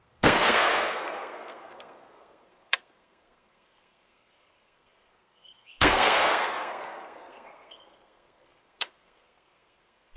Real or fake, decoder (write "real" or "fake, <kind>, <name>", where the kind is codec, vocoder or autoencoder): fake, codec, SNAC